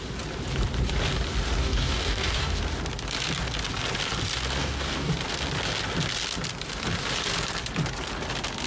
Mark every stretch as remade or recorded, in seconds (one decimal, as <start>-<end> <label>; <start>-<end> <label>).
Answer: 0.0-1.6 recorded; 1.6-2.6 remade; 2.6-4.6 recorded; 4.6-5.1 remade; 5.1-8.7 recorded